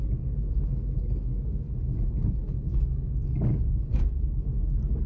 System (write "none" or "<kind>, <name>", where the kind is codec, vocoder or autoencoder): codec, DAC